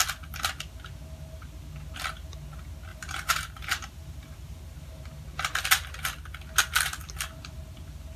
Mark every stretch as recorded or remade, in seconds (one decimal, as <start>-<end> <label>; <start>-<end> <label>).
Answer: 0.0-2.9 recorded; 2.9-5.0 remade; 5.0-8.2 recorded

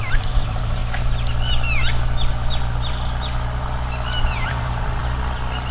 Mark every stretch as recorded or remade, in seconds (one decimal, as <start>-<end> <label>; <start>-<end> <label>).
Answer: 0.0-0.8 remade; 0.8-4.2 recorded; 4.2-5.0 remade; 5.0-5.7 recorded